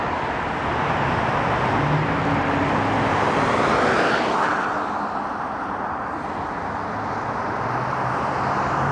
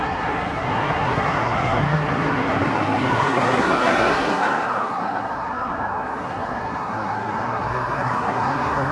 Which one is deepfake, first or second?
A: second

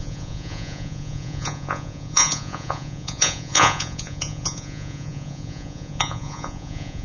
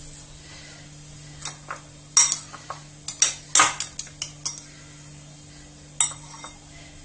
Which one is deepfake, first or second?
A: first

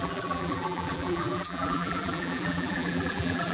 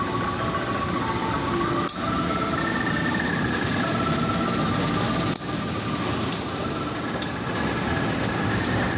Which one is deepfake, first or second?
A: first